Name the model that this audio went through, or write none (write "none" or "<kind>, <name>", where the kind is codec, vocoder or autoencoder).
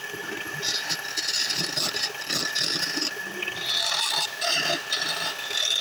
none